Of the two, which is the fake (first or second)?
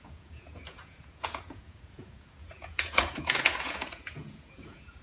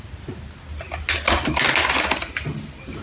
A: first